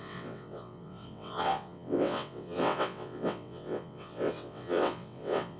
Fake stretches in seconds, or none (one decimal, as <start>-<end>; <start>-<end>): 0.0-5.6